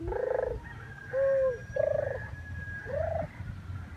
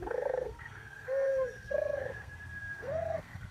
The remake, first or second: second